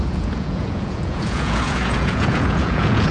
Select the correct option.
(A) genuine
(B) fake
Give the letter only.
B